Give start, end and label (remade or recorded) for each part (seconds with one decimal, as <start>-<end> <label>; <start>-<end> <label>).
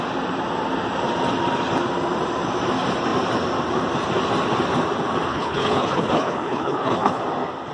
0.0-5.3 recorded; 5.3-7.2 remade; 7.2-7.7 recorded